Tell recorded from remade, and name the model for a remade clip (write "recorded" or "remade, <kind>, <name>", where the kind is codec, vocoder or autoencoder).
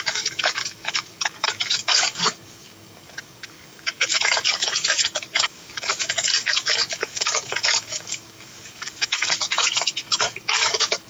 remade, codec, DAC